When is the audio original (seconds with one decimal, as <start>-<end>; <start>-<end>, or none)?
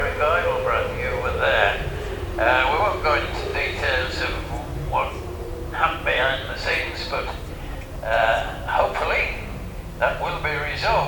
0.0-3.5; 7.7-9.2; 9.9-11.1